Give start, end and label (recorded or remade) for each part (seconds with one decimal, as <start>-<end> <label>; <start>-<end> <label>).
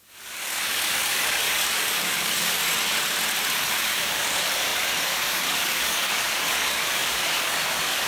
0.0-2.6 remade; 2.6-3.7 recorded; 3.7-8.1 remade